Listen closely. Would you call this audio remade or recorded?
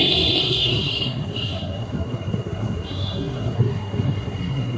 remade